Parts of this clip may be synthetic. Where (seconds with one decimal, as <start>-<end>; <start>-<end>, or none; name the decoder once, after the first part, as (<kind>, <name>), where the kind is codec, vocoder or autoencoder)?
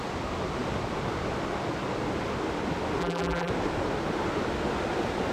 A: 3.0-3.5 (vocoder, BigVGAN v2)